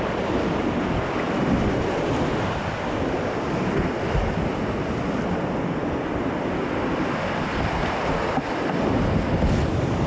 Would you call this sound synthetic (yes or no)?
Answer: yes